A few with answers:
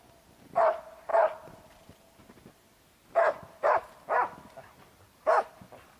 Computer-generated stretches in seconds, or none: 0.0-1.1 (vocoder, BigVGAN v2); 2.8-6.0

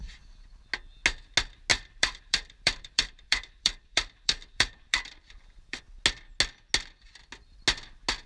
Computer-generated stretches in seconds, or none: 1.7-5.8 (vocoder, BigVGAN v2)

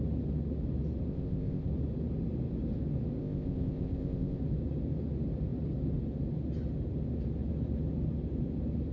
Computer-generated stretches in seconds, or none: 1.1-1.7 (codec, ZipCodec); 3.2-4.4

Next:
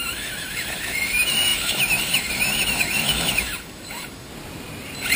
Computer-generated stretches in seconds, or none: 0.0-4.3 (autoencoder, DAC-VAE)

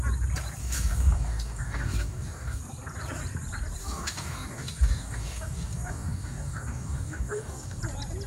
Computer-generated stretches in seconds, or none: 0.6-2.6 (codec, DAC); 3.8-7.8

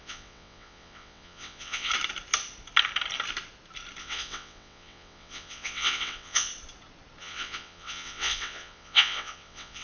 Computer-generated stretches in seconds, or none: 0.0-1.9 (vocoder, WaveNeXt); 4.0-6.5; 7.2-9.8